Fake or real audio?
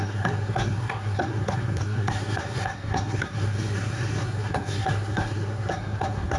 fake